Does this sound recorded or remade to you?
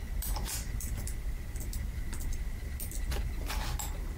recorded